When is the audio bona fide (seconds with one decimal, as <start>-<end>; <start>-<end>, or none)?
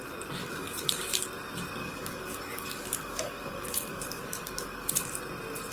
0.0-0.4; 1.0-1.8; 5.2-5.7